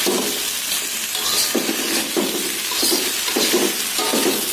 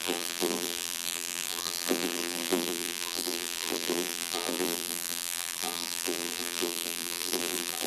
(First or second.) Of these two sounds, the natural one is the first